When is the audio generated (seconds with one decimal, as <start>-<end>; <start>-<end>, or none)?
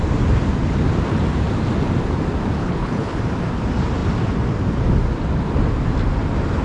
2.6-3.2